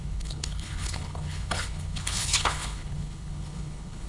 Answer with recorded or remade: remade